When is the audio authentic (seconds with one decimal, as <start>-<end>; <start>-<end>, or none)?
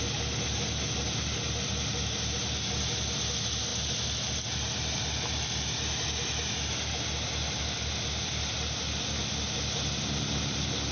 0.0-10.9